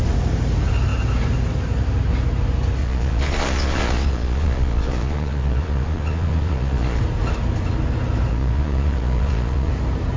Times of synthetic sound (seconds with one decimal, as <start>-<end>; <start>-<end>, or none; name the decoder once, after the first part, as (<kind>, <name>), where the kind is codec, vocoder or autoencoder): 2.8-7.0 (vocoder, Vocos); 8.3-9.7